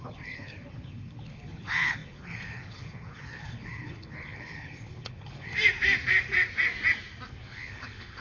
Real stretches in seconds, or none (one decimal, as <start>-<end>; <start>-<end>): 5.5-7.3